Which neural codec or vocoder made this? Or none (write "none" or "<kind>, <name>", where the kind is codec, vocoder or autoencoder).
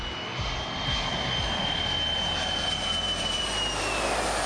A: none